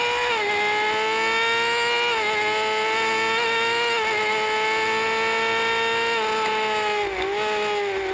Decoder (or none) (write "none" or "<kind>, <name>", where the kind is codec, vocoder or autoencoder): none